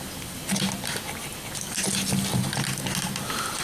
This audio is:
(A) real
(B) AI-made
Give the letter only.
A